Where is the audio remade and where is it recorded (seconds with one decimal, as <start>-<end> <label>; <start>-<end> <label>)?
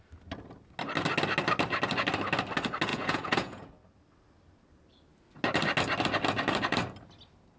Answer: 0.0-2.9 recorded; 2.9-3.7 remade; 3.7-7.6 recorded